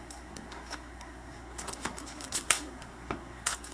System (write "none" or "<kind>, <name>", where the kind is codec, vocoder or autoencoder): codec, SNAC